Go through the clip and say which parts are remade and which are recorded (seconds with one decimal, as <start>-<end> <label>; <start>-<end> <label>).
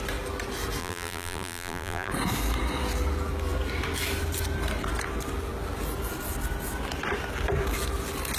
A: 0.0-0.8 recorded; 0.8-2.1 remade; 2.1-8.4 recorded